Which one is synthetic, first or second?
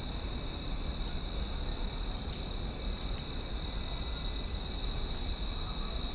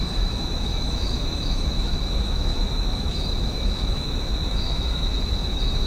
second